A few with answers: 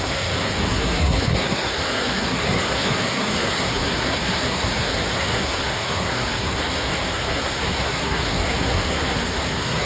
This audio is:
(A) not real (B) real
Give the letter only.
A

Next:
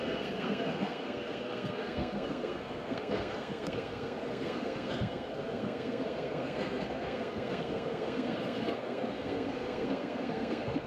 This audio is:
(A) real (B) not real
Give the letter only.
B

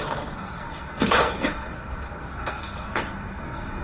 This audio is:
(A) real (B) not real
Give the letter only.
B